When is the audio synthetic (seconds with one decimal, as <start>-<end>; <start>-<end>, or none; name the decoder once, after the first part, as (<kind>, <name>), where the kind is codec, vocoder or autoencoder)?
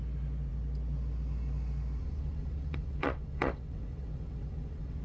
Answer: 2.0-5.0 (vocoder, WaveNeXt)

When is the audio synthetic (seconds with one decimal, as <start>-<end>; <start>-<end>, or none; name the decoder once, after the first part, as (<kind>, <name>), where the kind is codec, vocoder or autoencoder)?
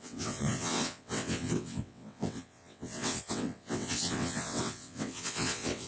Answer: 0.0-5.9 (vocoder, WaveNeXt)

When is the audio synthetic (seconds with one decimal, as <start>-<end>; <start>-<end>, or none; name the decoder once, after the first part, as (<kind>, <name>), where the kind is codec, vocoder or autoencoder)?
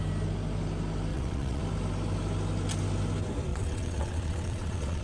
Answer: 1.1-1.6 (vocoder, WaveNeXt); 3.5-5.0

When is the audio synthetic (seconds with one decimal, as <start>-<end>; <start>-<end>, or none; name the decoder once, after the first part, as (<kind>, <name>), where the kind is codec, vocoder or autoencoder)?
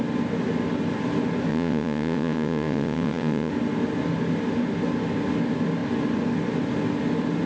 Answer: 1.5-3.5 (vocoder, WaveNeXt)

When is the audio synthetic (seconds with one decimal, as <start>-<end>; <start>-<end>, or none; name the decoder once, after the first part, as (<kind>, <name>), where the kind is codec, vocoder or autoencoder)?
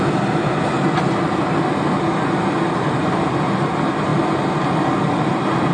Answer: none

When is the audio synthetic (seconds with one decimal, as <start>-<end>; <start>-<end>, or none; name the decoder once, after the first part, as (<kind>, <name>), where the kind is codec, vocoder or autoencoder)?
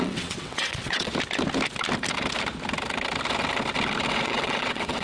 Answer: 0.0-1.1 (vocoder, WaveNeXt); 4.1-5.0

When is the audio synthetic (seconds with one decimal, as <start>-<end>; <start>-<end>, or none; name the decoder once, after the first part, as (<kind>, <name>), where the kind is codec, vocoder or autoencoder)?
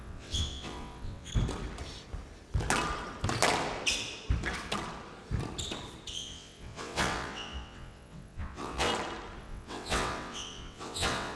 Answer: 0.0-1.3 (vocoder, WaveNeXt); 6.1-8.9; 9.4-11.4